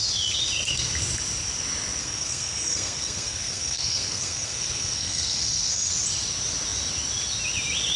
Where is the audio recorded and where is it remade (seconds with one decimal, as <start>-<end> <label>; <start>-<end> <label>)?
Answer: 0.0-2.0 recorded; 2.0-5.9 remade; 5.9-8.0 recorded